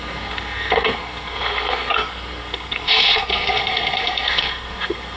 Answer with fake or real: fake